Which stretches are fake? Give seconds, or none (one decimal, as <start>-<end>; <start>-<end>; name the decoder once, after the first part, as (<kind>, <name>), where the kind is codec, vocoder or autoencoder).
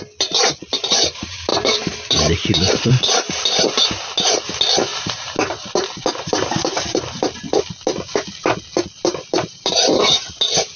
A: 1.5-2.9 (vocoder, BigVGAN v2); 4.9-7.4; 9.1-10.1